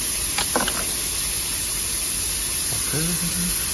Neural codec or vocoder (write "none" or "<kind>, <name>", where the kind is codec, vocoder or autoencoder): none